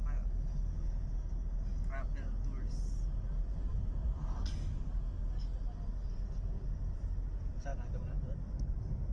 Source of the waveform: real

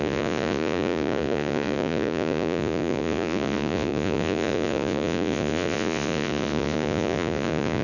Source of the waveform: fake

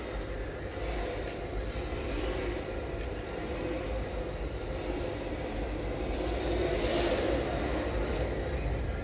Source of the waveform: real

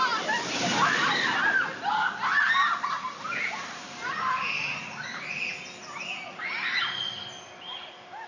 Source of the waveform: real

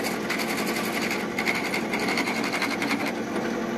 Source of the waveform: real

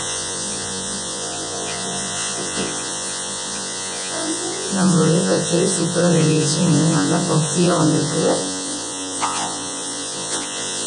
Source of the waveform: fake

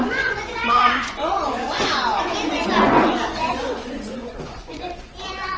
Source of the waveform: fake